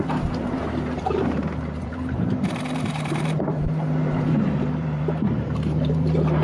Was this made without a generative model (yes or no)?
no